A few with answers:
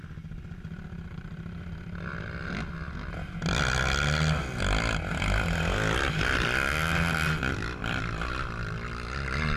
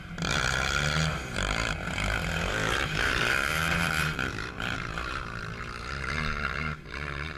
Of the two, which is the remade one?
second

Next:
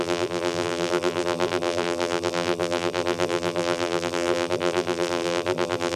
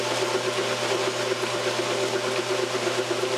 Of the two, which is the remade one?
first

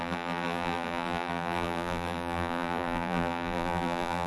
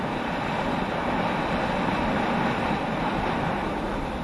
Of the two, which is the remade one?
first